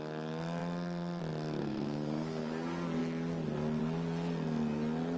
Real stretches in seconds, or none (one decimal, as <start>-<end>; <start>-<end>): 0.0-1.6; 2.5-5.2